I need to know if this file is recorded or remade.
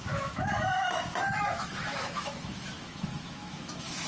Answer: remade